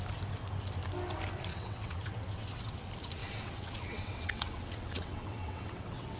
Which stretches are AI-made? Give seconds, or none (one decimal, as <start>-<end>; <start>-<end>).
1.5-2.8; 3.2-6.2

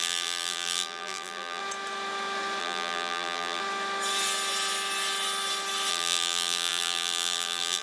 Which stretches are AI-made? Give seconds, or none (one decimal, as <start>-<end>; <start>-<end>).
0.0-1.6; 2.6-3.6; 5.9-7.8

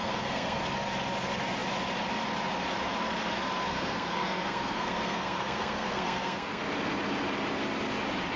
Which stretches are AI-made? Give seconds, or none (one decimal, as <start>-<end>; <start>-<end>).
0.0-0.6; 3.7-6.6

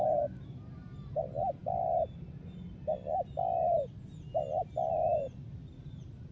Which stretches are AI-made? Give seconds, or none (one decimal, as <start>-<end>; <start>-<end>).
none

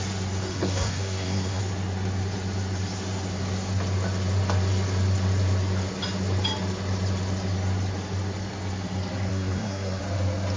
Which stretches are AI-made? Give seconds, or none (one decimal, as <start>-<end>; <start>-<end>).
0.5-1.6; 9.3-10.0

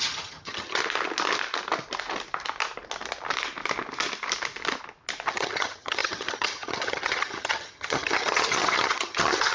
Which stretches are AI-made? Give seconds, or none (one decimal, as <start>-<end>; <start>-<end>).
0.0-0.8; 5.3-9.5

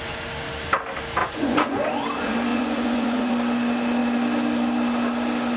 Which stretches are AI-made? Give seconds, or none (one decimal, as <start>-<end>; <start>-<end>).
1.2-1.8; 2.5-3.3

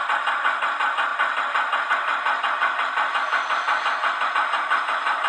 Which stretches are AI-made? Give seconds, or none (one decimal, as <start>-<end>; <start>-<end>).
none